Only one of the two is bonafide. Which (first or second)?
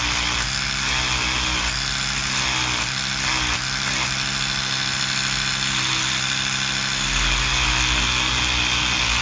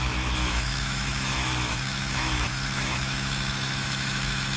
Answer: first